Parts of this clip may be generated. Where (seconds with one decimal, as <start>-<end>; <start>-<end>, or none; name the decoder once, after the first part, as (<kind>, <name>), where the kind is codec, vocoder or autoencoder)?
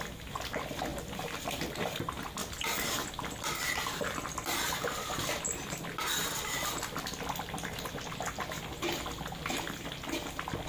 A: none